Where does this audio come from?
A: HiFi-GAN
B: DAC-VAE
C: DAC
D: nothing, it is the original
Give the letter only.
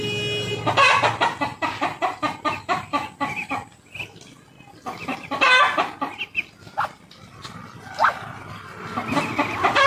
D